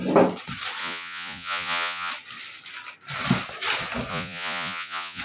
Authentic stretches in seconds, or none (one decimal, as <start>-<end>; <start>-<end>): 0.0-0.8; 2.1-4.1